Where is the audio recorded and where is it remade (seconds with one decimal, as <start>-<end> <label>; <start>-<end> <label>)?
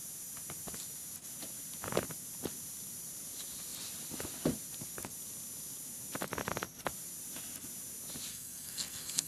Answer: 0.0-8.3 recorded; 8.3-9.3 remade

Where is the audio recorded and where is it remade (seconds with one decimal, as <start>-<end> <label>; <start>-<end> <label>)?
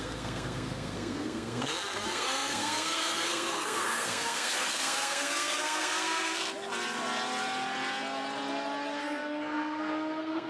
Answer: 0.0-6.4 remade; 6.4-9.0 recorded; 9.0-10.5 remade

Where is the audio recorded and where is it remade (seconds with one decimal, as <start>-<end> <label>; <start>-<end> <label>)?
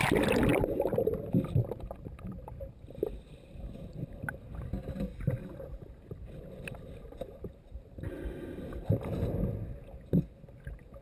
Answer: 0.0-11.0 recorded